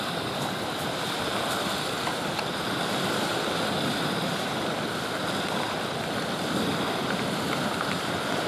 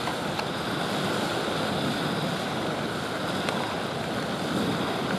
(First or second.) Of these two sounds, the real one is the second